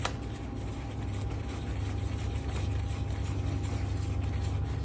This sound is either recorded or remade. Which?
recorded